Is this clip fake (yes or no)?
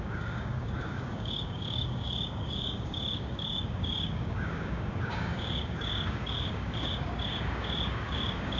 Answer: yes